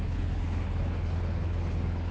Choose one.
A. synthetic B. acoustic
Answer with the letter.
A